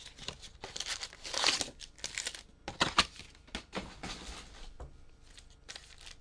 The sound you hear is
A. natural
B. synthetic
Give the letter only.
A